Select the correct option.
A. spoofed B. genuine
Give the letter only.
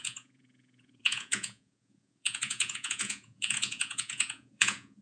A